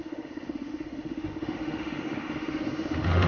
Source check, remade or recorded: remade